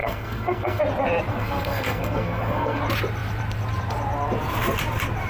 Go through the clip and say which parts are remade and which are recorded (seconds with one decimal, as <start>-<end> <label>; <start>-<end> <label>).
0.0-0.8 remade; 0.8-1.3 recorded; 1.3-2.8 remade; 2.8-5.3 recorded